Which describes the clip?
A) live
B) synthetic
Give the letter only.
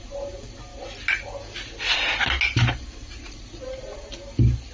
A